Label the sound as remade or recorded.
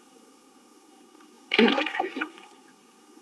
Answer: remade